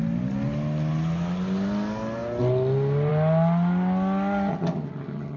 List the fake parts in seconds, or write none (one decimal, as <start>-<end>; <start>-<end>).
4.5-5.4